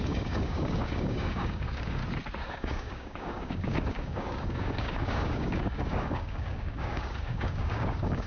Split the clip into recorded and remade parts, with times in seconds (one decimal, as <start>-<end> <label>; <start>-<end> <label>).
0.0-2.0 remade; 2.0-2.5 recorded; 2.5-8.3 remade